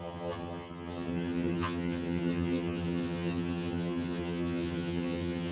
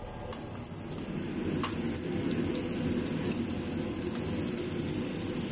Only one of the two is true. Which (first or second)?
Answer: second